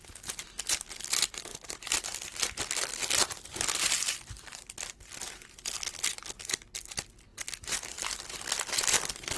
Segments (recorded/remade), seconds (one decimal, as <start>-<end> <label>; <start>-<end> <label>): 0.0-9.4 recorded